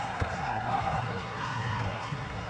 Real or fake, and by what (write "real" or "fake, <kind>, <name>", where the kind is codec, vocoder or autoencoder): fake, codec, SNAC